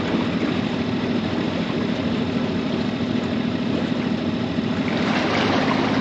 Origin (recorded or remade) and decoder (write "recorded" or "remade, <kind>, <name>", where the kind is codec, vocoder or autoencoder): recorded